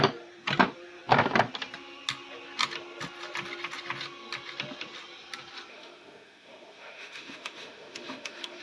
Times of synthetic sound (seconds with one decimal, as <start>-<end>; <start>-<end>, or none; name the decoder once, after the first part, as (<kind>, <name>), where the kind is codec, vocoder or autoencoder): 5.7-8.6 (autoencoder, DAC-VAE)